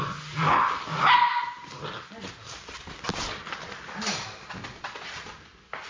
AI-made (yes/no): no